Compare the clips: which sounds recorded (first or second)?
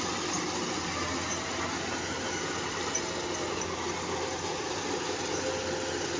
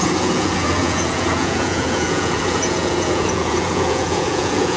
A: first